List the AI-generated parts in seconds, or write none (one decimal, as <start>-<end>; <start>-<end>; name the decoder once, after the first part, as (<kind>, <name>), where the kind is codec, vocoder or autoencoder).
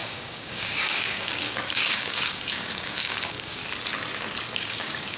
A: 0.0-3.6 (codec, DAC); 4.5-5.2